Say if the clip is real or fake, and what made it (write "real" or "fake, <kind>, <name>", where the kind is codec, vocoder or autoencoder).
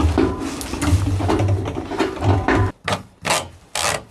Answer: real